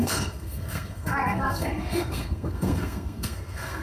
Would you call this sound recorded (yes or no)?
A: no